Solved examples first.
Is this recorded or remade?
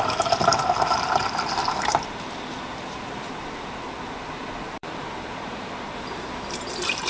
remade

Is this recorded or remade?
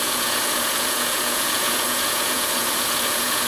remade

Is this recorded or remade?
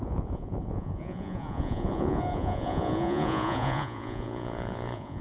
remade